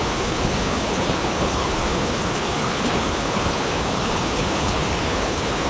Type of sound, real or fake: fake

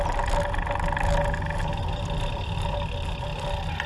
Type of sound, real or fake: real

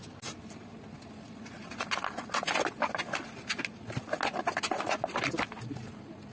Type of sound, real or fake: real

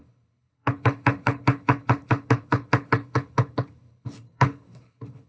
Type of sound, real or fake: fake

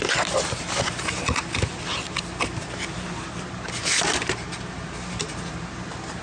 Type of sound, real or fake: real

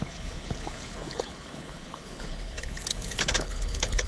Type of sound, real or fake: fake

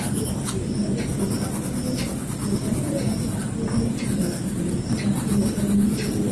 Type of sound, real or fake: real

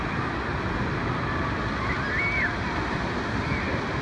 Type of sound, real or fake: real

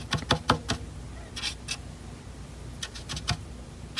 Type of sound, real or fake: real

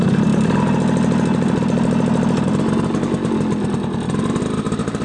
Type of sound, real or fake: real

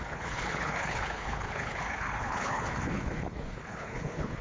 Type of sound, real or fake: fake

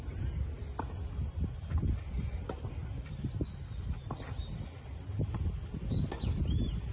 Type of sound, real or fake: real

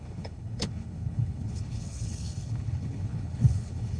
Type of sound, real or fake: fake